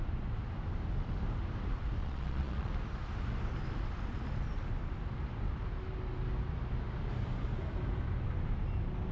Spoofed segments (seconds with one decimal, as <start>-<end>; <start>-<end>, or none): 2.0-2.7